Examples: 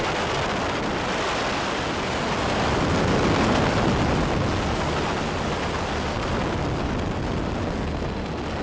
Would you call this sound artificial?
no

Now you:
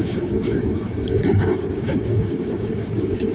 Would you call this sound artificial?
yes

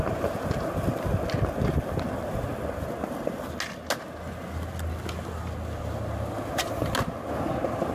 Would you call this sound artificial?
no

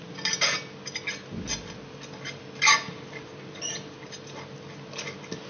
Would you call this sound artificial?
no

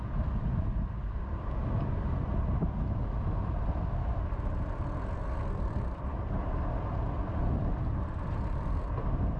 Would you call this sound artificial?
no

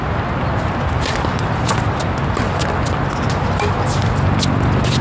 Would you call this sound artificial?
no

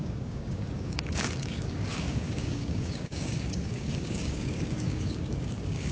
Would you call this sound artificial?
yes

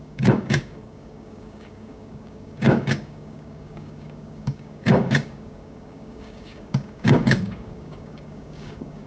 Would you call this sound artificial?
yes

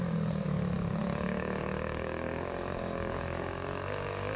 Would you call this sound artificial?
yes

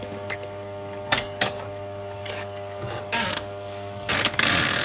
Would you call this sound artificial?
yes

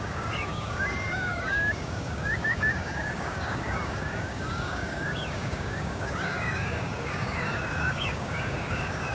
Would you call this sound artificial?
yes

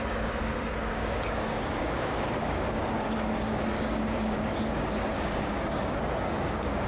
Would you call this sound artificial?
yes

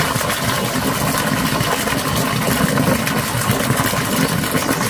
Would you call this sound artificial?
no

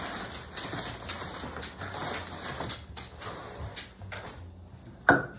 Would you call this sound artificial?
no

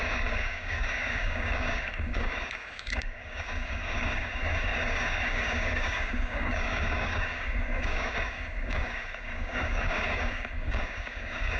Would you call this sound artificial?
yes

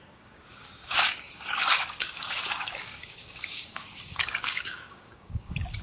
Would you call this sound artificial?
yes